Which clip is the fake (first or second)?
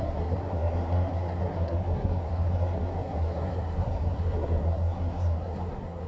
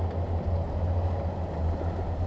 first